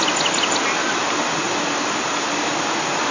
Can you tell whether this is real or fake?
real